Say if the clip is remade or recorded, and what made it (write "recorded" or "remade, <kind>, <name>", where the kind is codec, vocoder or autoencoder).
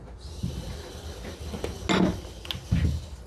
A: recorded